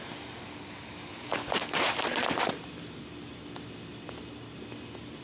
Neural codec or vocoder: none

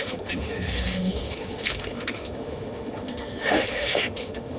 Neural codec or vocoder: autoencoder, DAC-VAE